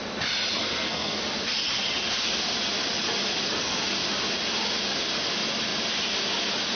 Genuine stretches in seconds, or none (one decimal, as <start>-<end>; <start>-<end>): 0.0-0.6; 1.2-6.8